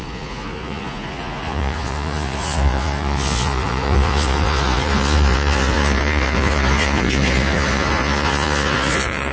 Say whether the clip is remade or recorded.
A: remade